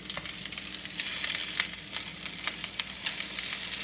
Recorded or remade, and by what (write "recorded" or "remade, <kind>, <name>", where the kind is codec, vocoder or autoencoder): recorded